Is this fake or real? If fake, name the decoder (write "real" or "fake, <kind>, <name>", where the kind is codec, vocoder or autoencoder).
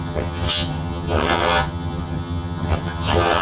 fake, vocoder, HiFi-GAN